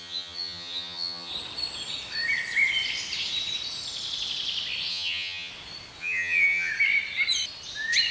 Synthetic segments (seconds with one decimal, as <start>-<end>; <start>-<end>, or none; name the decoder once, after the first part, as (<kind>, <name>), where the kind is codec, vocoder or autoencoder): 0.0-1.3 (vocoder, HiFi-GAN); 4.9-5.5; 6.0-6.7